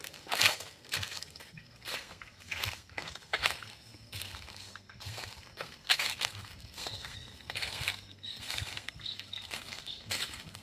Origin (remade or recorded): remade